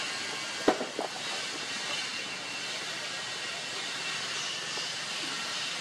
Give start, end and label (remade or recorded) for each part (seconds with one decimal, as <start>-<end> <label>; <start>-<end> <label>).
0.0-2.1 recorded; 2.1-5.8 remade